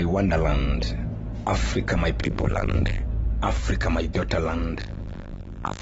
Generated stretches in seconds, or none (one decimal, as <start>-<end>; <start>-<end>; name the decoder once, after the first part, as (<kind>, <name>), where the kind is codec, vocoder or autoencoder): 2.2-3.0 (vocoder, BigVGAN v2); 4.8-5.8